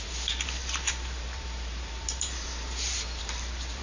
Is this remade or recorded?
remade